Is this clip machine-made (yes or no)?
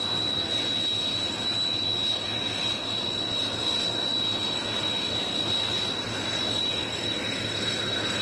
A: no